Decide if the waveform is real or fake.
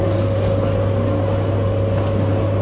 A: real